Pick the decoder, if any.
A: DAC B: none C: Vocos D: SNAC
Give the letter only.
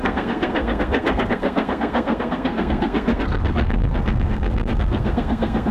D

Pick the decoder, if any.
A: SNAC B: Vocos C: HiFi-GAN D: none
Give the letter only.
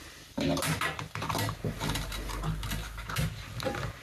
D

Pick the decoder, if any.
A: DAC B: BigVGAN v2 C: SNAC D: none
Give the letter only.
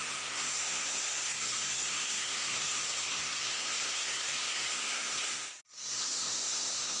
C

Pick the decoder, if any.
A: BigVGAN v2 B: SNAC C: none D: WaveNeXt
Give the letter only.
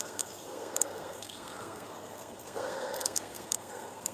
B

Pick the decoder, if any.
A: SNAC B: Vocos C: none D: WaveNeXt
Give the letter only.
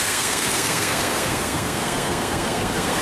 A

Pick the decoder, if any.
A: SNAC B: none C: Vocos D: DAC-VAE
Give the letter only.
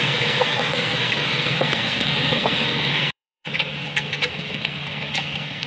A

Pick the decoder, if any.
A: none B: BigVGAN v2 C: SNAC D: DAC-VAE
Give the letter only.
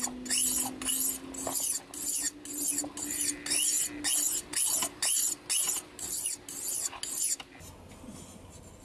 A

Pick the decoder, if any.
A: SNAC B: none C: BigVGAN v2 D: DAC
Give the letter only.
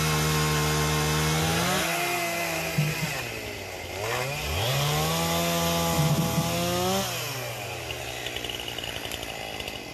B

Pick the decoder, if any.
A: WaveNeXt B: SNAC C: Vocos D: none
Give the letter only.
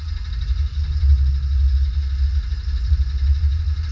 D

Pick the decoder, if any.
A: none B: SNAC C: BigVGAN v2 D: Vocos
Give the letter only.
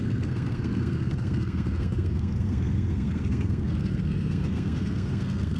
B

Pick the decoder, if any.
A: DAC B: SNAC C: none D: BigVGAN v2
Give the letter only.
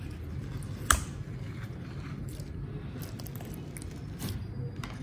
C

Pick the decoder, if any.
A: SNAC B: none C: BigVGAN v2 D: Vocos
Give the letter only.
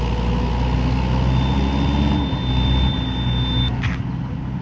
B